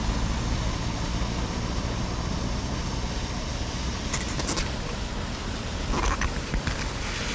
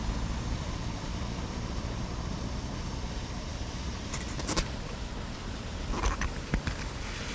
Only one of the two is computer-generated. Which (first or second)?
second